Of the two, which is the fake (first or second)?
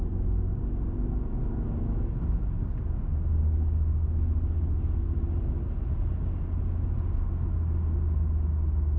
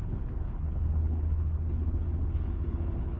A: second